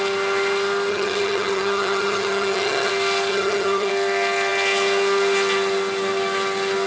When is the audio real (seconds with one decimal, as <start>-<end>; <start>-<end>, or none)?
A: 0.0-0.9; 2.9-3.3; 3.9-6.9